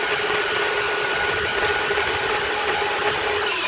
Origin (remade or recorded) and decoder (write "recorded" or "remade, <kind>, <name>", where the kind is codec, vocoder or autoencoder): recorded